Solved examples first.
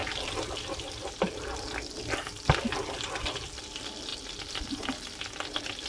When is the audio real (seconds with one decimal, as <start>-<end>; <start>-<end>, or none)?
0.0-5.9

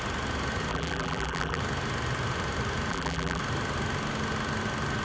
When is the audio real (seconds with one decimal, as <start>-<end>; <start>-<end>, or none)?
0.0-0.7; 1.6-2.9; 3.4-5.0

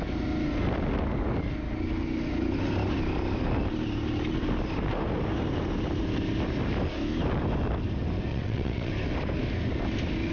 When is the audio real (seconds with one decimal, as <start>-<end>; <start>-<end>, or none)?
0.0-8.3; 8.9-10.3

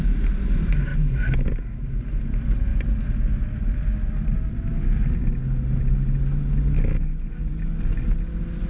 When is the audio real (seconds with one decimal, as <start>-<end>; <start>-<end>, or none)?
0.0-8.7

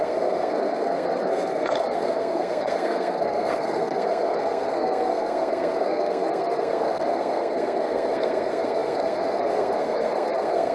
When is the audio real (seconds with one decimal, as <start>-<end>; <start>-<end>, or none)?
none

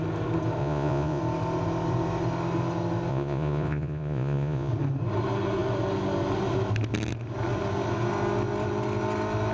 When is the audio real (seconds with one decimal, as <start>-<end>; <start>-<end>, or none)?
0.0-0.6; 1.2-3.1; 4.7-9.5